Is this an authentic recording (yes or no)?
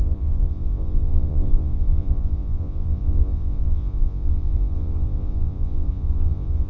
no